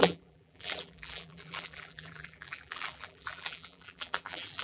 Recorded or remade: remade